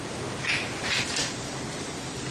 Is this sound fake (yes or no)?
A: yes